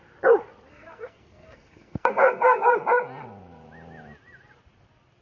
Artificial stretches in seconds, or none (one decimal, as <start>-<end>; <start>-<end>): 0.7-2.7